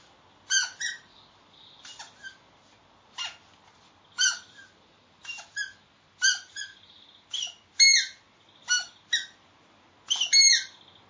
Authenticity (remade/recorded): recorded